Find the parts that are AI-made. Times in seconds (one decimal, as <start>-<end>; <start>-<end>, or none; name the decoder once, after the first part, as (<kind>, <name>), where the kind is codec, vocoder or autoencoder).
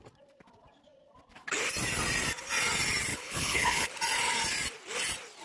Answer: 3.1-3.9 (codec, HILCodec)